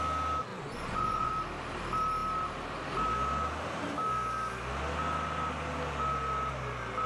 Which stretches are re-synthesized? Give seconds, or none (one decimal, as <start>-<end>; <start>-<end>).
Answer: 0.5-1.3